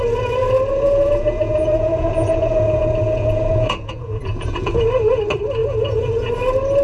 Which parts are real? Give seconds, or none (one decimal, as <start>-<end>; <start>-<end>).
0.0-0.7; 4.8-5.6; 6.3-6.8